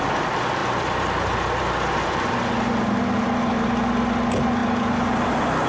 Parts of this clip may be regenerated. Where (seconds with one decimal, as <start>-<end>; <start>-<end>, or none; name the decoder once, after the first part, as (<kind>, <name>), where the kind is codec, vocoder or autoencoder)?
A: none